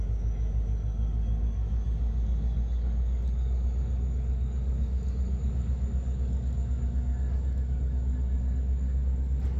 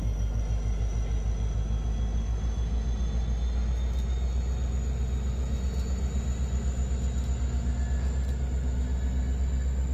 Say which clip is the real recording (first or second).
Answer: second